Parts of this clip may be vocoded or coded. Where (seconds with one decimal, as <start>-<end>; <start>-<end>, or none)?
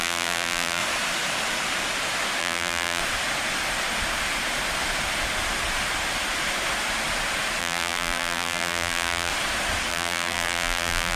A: 0.0-0.8; 2.4-3.0; 7.6-9.3; 9.9-11.2